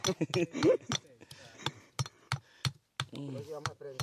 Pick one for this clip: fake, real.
real